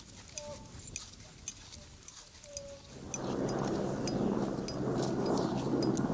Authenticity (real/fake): real